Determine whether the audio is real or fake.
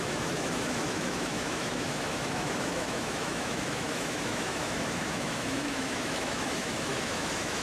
fake